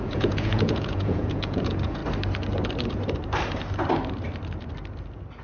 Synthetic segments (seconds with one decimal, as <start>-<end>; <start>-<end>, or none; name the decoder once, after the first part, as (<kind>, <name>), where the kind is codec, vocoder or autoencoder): 0.0-2.0 (vocoder, Vocos)